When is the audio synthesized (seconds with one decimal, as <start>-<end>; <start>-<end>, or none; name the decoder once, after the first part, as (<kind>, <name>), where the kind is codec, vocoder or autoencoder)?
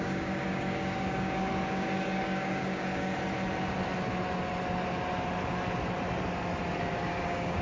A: 0.0-3.1 (codec, DAC); 6.8-7.6